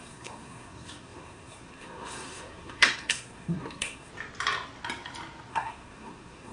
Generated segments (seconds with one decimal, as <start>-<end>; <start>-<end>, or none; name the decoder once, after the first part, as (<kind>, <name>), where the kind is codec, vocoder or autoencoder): 0.0-4.1 (codec, SNAC); 5.5-6.5

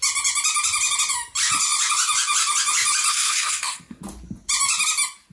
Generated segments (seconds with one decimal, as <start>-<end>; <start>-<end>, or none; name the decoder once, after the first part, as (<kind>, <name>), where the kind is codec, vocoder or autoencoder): 3.1-4.0 (codec, SNAC)

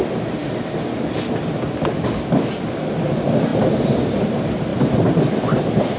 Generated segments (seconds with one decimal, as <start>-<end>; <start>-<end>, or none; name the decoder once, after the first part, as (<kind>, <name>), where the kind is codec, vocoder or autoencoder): 4.7-5.3 (vocoder, BigVGAN v2)

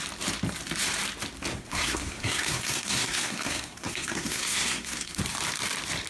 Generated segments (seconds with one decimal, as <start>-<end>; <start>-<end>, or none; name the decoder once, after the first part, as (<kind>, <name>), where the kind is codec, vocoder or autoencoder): 1.5-5.2 (codec, SNAC)

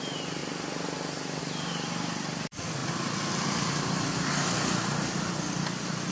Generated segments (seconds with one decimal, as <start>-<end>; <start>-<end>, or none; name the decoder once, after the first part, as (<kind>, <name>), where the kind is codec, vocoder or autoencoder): 0.0-0.4 (vocoder, BigVGAN v2); 1.4-6.1

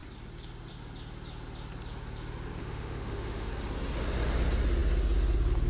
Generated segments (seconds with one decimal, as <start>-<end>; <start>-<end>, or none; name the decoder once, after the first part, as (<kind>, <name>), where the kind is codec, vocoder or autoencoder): 2.6-3.5 (autoencoder, DAC-VAE)

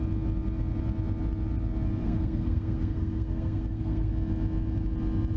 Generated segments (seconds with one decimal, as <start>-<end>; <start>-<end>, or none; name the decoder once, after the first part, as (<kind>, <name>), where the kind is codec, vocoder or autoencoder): 2.0-4.1 (codec, SNAC)